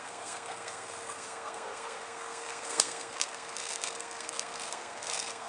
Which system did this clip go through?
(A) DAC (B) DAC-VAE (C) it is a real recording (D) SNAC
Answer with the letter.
D